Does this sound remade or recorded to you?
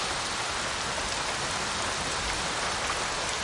recorded